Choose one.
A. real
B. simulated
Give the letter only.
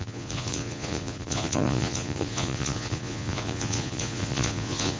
B